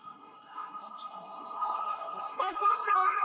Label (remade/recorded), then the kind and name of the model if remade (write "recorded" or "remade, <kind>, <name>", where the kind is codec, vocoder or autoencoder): remade, codec, SNAC